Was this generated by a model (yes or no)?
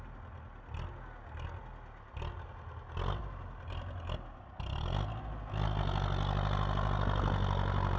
no